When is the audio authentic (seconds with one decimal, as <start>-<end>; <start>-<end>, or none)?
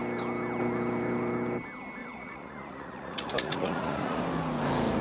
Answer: 0.0-2.0; 4.2-5.0